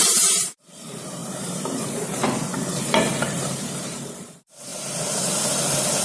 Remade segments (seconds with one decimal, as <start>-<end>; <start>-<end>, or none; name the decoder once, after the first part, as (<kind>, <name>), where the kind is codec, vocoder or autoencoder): 0.0-2.2 (vocoder, BigVGAN v2); 2.8-4.7

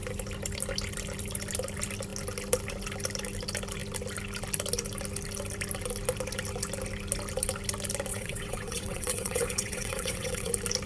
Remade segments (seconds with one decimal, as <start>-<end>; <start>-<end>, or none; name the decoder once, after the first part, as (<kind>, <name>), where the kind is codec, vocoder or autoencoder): 8.1-10.5 (vocoder, WaveNeXt)

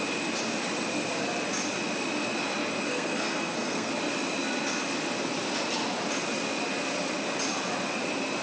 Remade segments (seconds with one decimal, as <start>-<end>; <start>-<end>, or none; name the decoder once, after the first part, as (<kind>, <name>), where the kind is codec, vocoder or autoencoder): 2.9-3.9 (codec, SNAC)

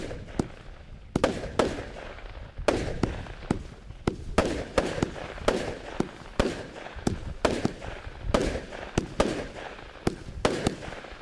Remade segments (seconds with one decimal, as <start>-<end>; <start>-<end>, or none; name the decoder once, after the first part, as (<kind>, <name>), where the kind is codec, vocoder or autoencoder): 4.4-6.6 (vocoder, BigVGAN v2)